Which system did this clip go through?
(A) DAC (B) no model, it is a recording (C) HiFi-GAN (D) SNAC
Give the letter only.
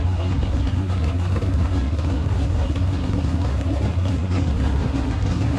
D